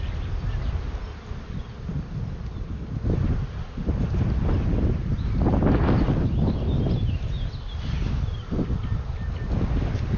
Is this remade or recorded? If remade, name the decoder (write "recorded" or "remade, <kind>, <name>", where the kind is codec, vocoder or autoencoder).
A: recorded